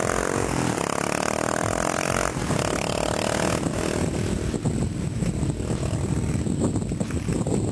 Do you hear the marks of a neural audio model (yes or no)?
no